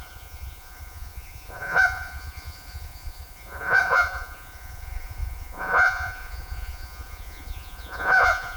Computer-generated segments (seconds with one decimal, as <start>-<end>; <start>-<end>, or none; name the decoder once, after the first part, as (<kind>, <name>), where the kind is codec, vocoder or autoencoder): 0.0-8.6 (vocoder, Vocos)